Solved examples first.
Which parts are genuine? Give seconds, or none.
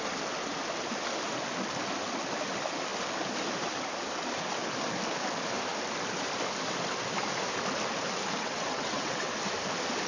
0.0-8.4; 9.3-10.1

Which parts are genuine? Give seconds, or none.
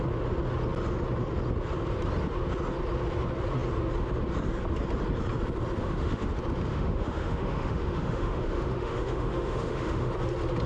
0.0-5.8; 6.3-6.7; 10.1-10.7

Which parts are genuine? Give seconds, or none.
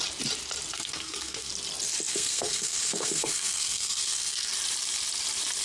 0.0-0.7; 1.5-2.1; 4.5-5.6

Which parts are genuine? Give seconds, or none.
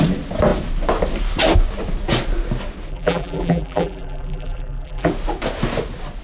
0.0-2.9; 5.1-6.2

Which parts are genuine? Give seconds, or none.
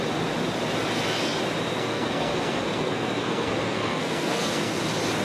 0.0-1.7; 4.8-5.2